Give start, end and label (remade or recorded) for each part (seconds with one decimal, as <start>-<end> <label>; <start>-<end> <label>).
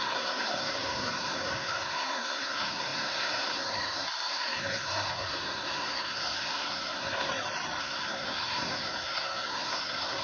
0.0-7.3 remade; 7.3-7.8 recorded; 7.8-10.2 remade